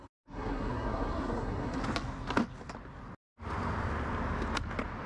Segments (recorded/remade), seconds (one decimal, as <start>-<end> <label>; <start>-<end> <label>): 0.0-1.8 remade; 1.8-5.1 recorded

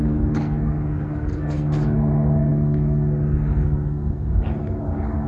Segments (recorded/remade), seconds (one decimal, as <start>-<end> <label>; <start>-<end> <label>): 0.0-5.3 remade

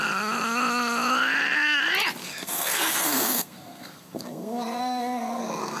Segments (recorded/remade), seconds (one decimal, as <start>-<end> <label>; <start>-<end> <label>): 0.0-2.2 recorded; 2.2-5.8 remade